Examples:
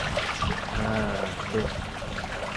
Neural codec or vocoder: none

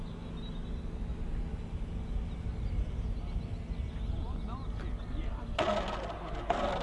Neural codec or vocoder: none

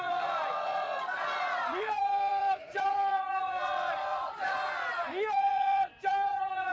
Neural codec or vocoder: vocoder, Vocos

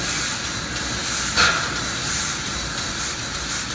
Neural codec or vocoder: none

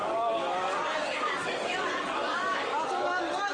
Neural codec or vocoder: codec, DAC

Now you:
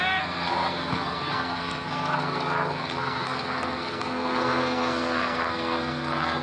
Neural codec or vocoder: codec, SNAC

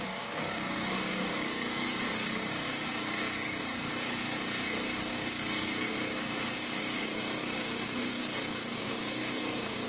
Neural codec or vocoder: codec, DAC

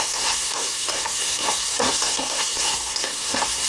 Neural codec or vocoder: codec, SNAC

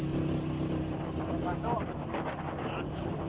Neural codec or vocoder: none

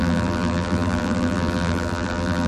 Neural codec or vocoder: vocoder, BigVGAN v2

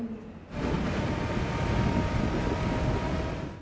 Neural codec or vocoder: none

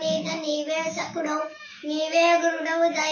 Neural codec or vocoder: autoencoder, DAC-VAE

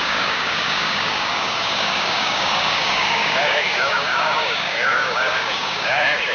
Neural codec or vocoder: codec, DAC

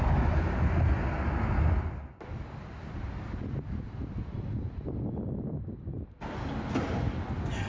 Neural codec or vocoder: none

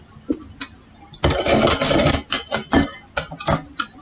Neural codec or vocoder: none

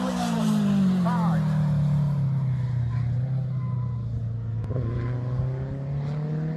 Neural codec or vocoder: none